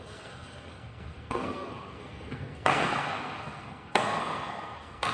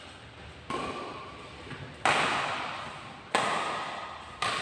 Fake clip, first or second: first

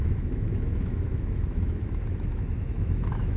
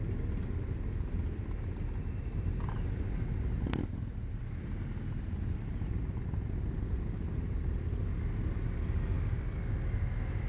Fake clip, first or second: first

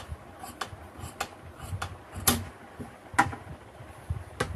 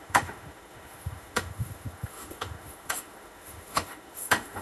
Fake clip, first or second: second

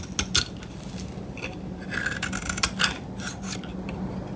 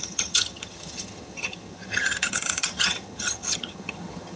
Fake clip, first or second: second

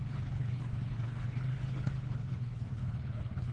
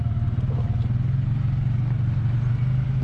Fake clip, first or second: first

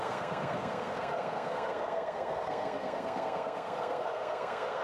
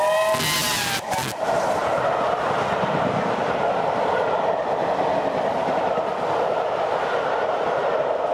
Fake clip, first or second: first